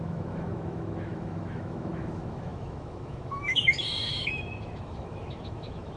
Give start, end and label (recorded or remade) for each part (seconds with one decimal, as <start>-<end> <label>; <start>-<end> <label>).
0.0-6.0 remade